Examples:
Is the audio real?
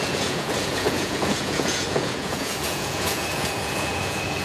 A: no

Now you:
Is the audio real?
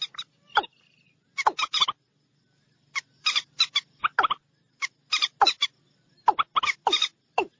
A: yes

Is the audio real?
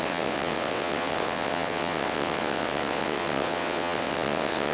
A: no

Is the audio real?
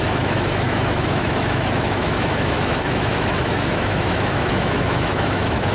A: no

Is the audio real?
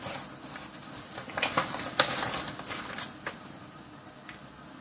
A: yes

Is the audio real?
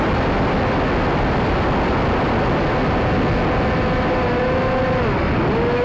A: yes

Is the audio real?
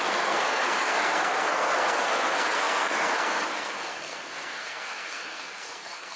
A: no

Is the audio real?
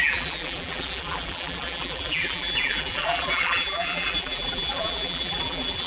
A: no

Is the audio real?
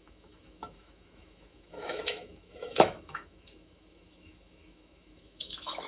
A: no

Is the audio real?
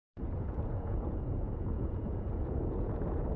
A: no